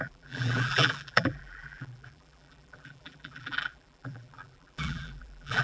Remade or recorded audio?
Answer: remade